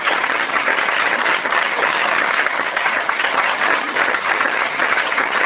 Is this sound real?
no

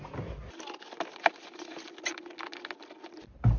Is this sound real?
yes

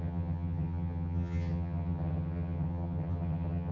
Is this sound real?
no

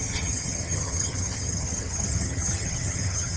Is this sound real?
no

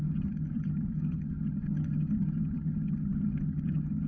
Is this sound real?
no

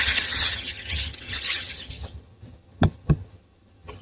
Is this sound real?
no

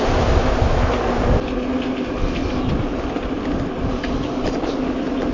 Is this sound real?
yes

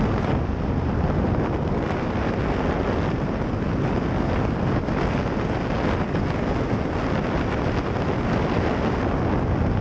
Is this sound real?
yes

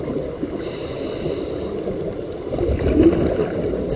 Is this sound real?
yes